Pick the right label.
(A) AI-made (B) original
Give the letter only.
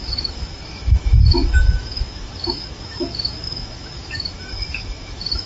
A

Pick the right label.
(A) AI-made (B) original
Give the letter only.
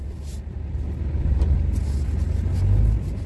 B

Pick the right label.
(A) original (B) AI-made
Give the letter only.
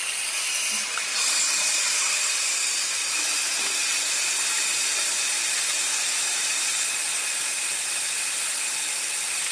A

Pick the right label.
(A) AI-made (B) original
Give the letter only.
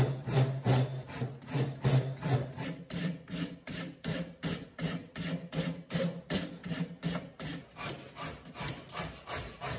B